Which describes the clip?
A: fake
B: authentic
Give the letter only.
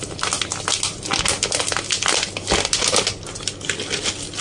B